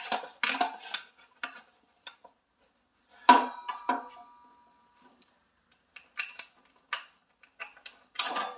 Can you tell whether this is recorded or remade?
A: recorded